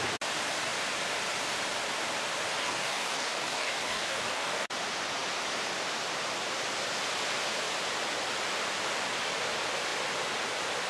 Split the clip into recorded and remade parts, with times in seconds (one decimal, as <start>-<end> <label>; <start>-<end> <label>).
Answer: 0.0-2.6 recorded; 2.6-4.7 remade; 4.7-10.9 recorded